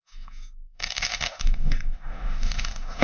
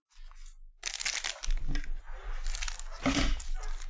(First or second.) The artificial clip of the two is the first